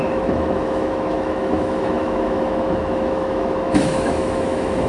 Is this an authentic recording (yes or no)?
no